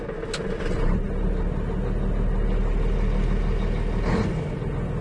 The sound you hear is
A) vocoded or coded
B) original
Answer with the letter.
B